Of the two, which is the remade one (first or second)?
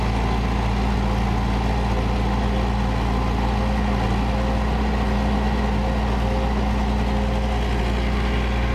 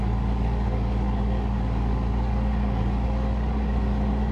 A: second